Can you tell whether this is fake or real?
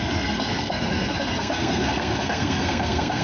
fake